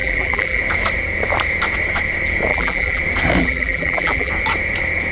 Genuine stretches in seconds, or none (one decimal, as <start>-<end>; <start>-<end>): 0.6-2.5; 3.0-3.4; 4.3-5.1